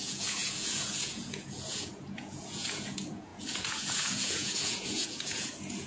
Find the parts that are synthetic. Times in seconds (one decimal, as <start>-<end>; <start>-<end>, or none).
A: 0.0-5.9